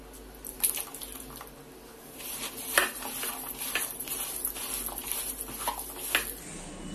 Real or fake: real